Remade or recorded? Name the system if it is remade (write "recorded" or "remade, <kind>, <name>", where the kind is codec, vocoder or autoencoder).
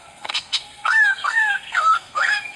remade, codec, SNAC